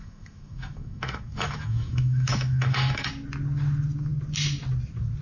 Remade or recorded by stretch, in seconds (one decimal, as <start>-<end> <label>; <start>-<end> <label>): 0.0-3.1 remade; 3.1-5.2 recorded

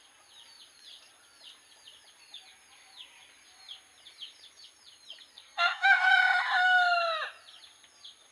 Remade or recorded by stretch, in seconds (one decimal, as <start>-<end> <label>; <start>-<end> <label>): 0.0-5.3 recorded; 5.3-6.1 remade; 6.1-8.3 recorded

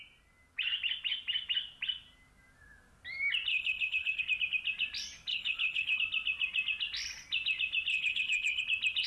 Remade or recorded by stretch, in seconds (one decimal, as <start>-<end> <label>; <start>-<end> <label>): 0.0-3.5 recorded; 3.5-4.2 remade; 4.2-5.3 recorded; 5.3-6.0 remade; 6.0-7.9 recorded; 7.9-8.6 remade; 8.6-9.1 recorded

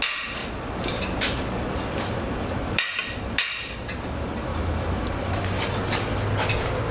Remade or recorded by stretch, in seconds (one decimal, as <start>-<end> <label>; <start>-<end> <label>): 0.0-4.5 recorded; 4.5-6.2 remade; 6.2-6.9 recorded

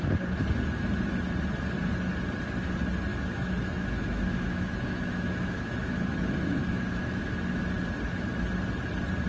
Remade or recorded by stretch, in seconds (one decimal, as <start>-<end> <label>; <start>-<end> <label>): 0.0-3.1 recorded; 3.1-7.6 remade; 7.6-9.3 recorded

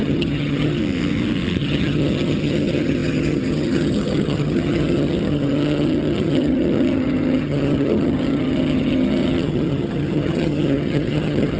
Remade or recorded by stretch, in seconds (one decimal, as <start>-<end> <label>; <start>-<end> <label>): 0.0-0.8 remade; 0.8-1.6 recorded; 1.6-11.6 remade